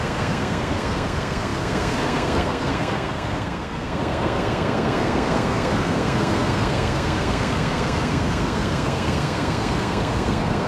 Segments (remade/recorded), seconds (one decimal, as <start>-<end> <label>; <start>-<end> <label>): 0.0-10.7 remade